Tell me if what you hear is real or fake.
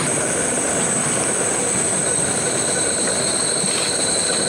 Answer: real